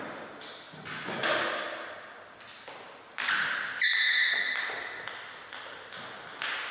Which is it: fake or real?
real